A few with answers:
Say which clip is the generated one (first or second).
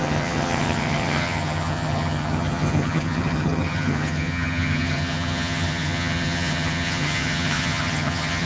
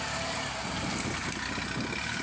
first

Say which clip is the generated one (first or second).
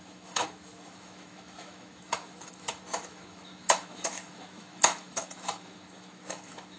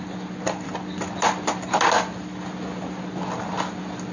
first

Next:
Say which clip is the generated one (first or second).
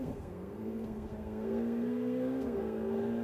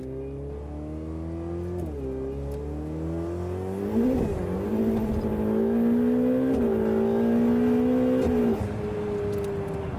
first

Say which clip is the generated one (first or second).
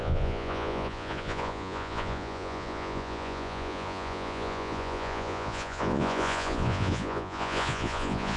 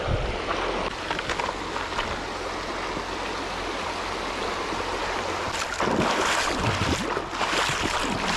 first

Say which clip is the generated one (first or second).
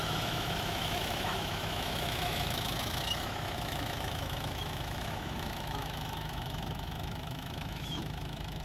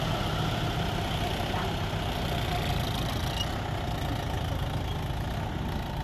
first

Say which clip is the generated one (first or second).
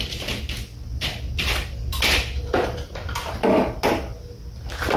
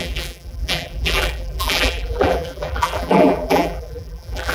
second